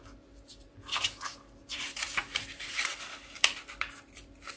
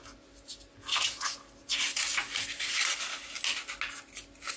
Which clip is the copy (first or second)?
first